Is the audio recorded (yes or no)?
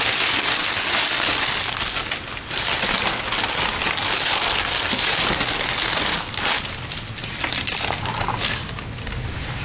yes